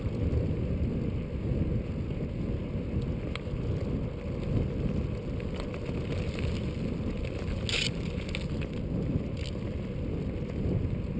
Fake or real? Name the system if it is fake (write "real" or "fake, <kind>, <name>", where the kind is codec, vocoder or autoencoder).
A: real